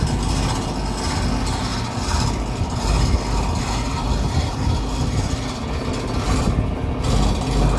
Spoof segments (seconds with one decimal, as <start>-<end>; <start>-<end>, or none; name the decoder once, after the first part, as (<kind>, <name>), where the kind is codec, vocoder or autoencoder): none